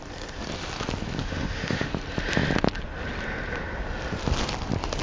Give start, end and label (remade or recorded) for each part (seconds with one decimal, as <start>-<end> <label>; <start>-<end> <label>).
0.0-1.2 recorded; 1.2-1.9 remade; 1.9-5.0 recorded